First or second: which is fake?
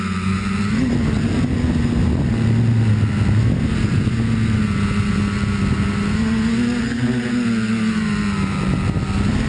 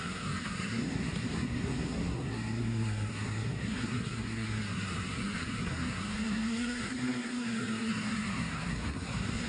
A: second